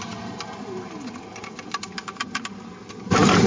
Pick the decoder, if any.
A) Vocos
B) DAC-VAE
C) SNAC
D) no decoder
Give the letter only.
D